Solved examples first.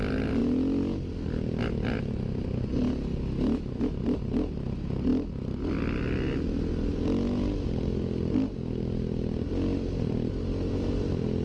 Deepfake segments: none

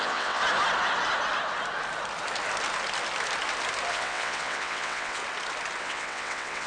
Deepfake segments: 0.0-0.4 (vocoder, WaveNeXt); 3.9-5.2; 5.8-6.7

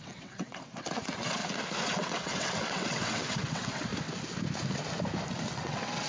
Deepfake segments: 0.0-1.4 (vocoder, WaveNeXt); 1.9-3.9; 5.5-6.1

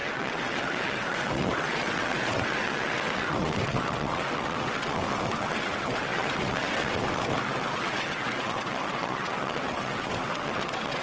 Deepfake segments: 0.0-11.0 (vocoder, WaveNeXt)